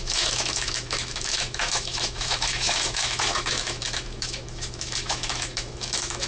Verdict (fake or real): fake